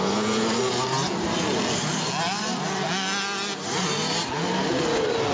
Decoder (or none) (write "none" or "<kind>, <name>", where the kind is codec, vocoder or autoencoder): none